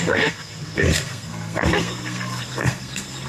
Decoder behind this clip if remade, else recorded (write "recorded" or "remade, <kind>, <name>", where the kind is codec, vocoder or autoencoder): remade, codec, SNAC